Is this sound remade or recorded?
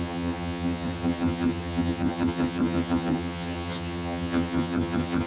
remade